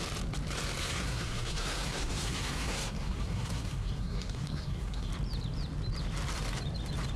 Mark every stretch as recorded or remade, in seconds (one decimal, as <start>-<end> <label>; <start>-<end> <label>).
0.0-0.8 recorded; 0.8-5.1 remade; 5.1-7.2 recorded